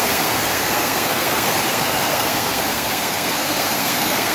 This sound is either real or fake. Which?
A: fake